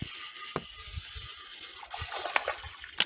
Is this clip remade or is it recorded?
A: recorded